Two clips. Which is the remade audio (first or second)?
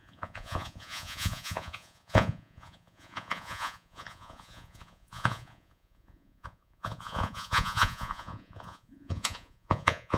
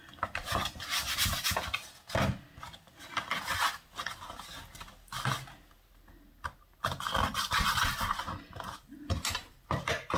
first